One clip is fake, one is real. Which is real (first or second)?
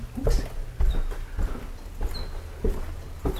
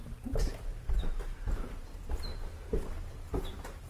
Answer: first